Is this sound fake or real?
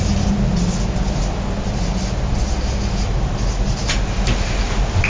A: real